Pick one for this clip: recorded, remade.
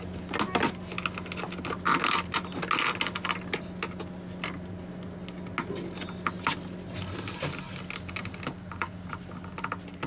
recorded